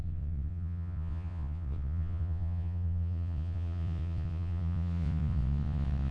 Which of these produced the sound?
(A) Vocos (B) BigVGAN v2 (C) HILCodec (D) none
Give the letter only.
A